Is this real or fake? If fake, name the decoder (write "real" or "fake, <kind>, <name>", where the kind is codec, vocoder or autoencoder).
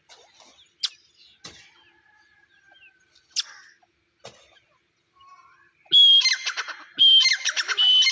real